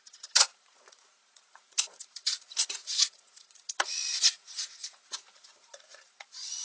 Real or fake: fake